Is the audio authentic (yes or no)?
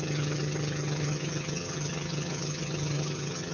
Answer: no